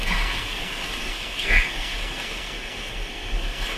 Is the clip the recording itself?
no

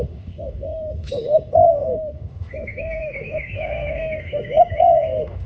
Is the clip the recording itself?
no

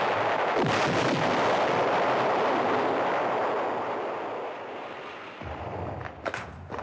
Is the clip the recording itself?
yes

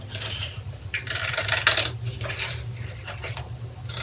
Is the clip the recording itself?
yes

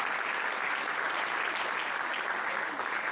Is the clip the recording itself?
yes